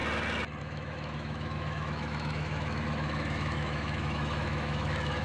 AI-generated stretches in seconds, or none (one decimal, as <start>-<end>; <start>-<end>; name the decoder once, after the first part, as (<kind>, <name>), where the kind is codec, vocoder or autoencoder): 0.6-5.2 (autoencoder, DAC-VAE)